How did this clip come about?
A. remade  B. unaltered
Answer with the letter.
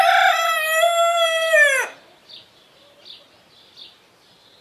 B